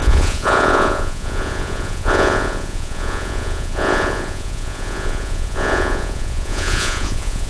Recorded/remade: remade